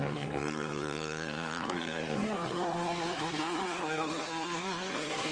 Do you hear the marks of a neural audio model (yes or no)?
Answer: yes